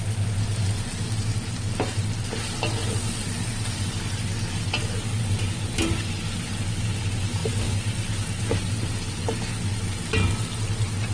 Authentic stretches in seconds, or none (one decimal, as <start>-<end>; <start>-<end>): 0.0-11.1